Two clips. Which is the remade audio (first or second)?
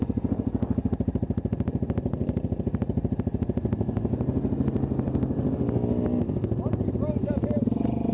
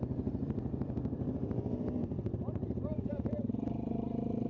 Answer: second